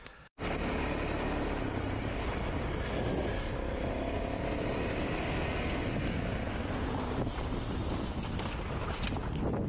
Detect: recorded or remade recorded